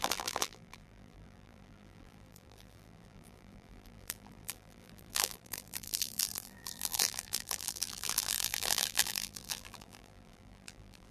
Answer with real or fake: fake